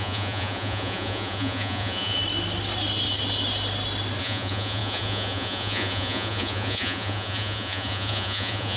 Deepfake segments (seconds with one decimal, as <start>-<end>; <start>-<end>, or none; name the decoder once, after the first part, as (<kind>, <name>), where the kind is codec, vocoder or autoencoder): 0.0-2.2 (vocoder, Vocos); 4.2-8.8